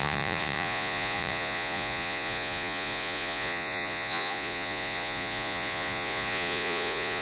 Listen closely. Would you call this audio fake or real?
fake